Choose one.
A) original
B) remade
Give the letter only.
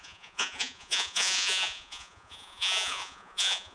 B